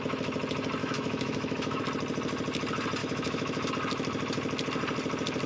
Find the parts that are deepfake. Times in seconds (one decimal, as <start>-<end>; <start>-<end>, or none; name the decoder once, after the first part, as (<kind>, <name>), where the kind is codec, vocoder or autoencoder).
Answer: 0.8-1.8 (autoencoder, DAC-VAE); 3.0-3.7